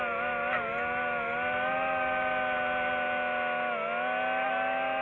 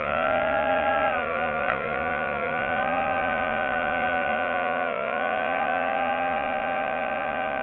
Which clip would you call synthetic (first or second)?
second